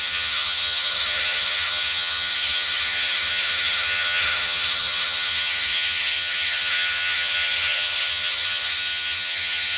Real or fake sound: fake